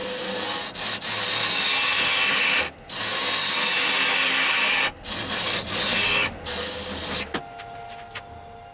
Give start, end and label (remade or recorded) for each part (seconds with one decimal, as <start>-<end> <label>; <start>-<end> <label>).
0.0-8.7 recorded

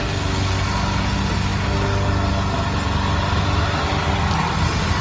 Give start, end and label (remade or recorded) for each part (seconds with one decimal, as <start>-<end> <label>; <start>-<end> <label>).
0.0-5.0 recorded

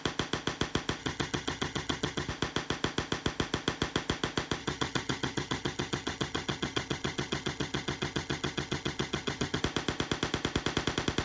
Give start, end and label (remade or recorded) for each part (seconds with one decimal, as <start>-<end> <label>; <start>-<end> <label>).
0.0-1.0 recorded; 1.0-2.3 remade; 2.3-4.6 recorded; 4.6-9.6 remade; 9.6-11.2 recorded

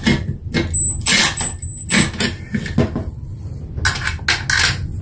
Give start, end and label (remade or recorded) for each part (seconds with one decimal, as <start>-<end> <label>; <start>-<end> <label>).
0.0-5.0 recorded

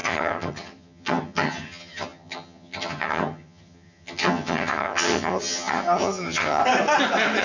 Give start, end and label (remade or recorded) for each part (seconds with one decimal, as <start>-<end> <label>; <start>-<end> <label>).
0.0-6.6 remade; 6.6-7.4 recorded

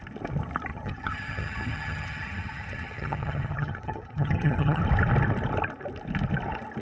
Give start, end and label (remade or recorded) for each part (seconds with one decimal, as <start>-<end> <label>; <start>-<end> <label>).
0.0-0.7 recorded; 0.7-4.8 remade; 4.8-6.8 recorded